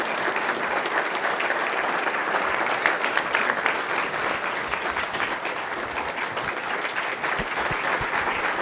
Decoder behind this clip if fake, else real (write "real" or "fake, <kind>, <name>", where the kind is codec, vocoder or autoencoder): real